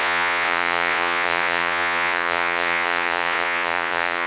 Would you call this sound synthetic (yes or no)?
yes